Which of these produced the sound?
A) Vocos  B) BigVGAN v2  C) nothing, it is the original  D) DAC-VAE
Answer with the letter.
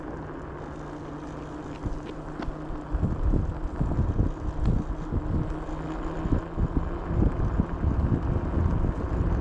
C